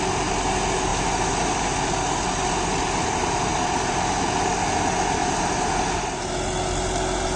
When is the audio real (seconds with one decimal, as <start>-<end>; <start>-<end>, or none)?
0.0-5.2; 5.8-7.4